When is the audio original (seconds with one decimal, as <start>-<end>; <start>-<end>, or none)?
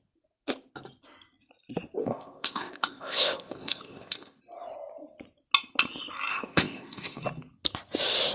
0.0-2.0; 4.4-6.3; 7.2-8.3